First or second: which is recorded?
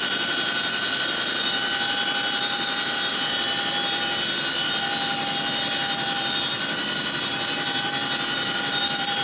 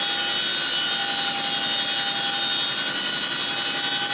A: second